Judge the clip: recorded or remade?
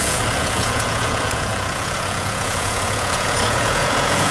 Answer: remade